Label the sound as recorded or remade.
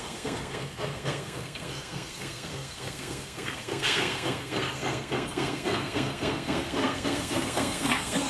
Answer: remade